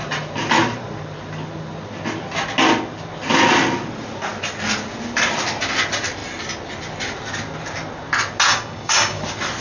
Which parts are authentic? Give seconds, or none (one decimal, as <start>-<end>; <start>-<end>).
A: 0.0-8.5; 9.2-9.6